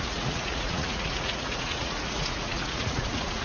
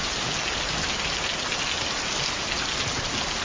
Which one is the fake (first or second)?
first